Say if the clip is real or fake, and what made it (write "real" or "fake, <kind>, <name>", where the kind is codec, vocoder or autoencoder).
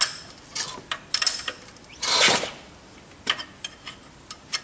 real